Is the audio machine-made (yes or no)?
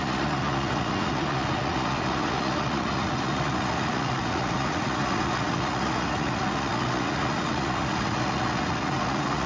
yes